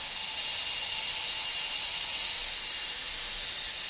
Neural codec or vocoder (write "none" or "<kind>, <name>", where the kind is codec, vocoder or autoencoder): none